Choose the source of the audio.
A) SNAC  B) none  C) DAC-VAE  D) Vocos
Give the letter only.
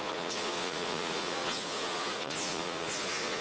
D